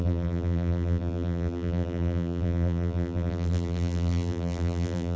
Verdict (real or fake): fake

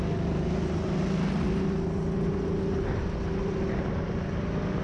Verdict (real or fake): real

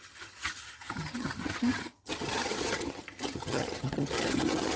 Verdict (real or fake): fake